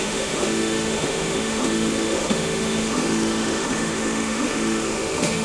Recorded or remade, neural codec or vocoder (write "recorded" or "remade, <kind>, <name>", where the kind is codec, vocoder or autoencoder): remade, autoencoder, DAC-VAE